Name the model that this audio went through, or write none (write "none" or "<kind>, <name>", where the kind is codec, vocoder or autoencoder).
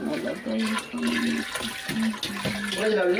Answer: none